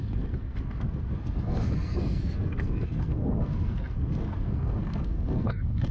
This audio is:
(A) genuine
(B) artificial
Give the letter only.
B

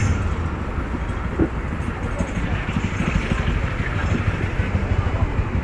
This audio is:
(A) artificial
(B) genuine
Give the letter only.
B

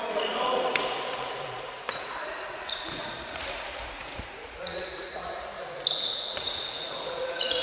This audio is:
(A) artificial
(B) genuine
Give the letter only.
A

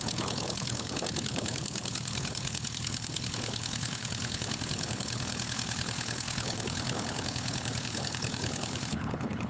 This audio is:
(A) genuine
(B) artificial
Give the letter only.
B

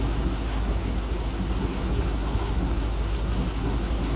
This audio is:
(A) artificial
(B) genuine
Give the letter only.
A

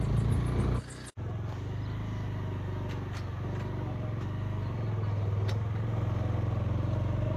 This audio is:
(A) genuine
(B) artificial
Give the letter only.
A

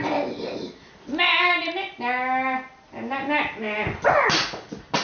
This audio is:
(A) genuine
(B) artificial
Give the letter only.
A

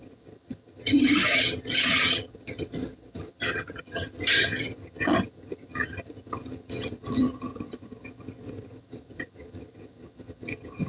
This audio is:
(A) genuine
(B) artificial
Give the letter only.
B